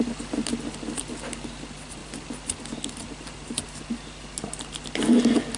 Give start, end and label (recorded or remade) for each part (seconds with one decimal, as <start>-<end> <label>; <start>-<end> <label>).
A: 0.0-5.6 recorded